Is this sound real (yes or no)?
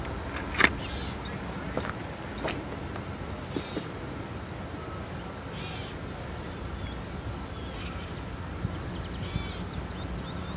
yes